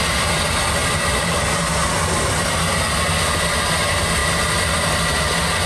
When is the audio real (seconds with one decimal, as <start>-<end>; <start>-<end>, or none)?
0.0-5.7